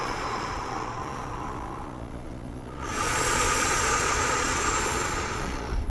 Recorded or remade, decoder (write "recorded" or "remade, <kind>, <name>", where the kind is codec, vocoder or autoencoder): remade, vocoder, Vocos